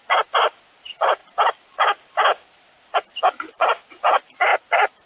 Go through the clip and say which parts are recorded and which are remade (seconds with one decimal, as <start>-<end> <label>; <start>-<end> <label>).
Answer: 0.0-4.5 remade; 4.5-5.1 recorded